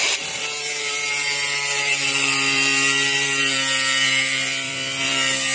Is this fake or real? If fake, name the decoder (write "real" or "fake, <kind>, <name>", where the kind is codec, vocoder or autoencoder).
fake, vocoder, BigVGAN v2